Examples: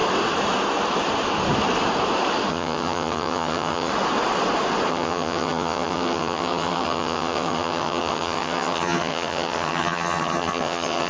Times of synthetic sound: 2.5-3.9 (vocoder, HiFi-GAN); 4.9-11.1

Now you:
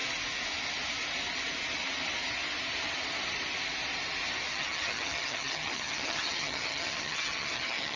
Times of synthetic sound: 4.5-8.0 (vocoder, HiFi-GAN)

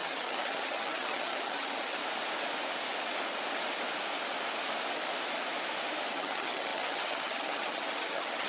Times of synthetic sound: 0.0-2.0 (vocoder, HiFi-GAN); 6.1-8.5

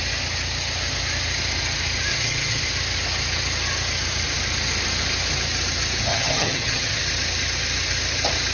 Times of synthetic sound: 2.1-2.6 (vocoder, HiFi-GAN); 6.1-7.0

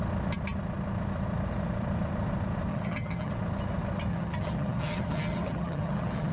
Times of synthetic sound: 2.7-3.3 (vocoder, HiFi-GAN); 4.1-6.3